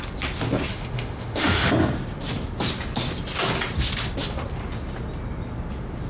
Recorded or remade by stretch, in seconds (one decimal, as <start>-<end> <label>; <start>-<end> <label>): 0.0-0.7 recorded; 0.7-1.7 remade; 1.7-6.1 recorded